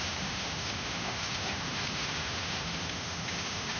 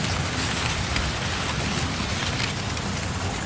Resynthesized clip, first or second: first